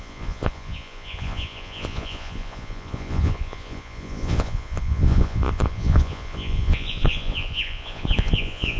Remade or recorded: remade